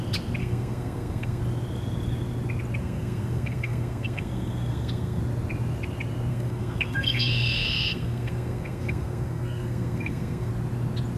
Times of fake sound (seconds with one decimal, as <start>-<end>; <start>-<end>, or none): 0.4-1.4; 2.8-5.2; 6.3-10.5

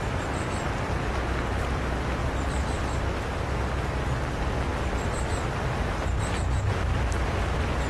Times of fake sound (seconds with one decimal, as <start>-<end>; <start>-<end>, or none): none